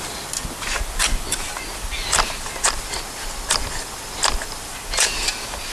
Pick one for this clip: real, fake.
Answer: real